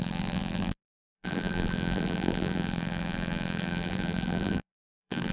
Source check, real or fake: fake